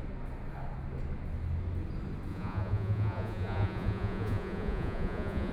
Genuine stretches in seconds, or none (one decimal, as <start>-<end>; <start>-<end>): 0.0-2.3